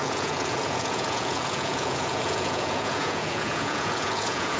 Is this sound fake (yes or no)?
yes